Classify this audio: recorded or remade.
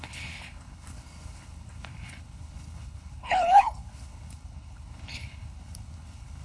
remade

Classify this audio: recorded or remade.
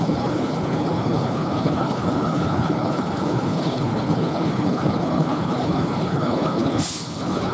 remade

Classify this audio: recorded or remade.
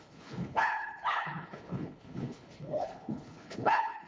remade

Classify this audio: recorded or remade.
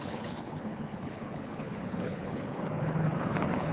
remade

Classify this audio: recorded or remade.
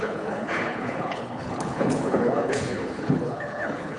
remade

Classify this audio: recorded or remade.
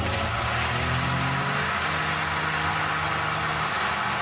recorded